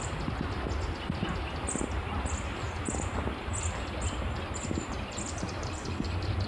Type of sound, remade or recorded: recorded